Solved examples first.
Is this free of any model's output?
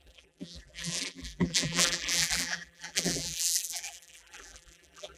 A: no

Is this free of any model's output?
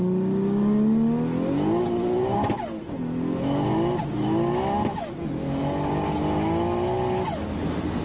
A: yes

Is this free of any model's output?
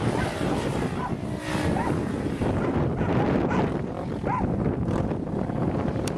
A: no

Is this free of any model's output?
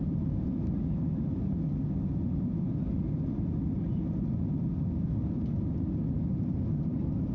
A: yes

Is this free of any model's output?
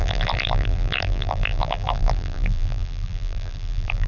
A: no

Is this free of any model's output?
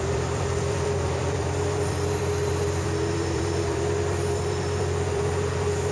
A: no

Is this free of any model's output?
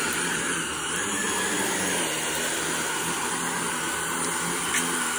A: yes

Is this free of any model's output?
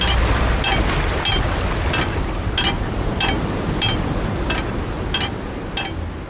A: yes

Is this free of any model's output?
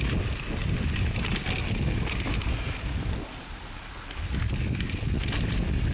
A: yes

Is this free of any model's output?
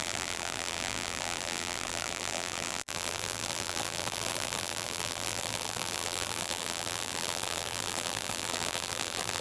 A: no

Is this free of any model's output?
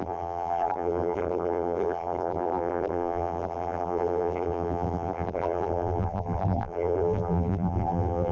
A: no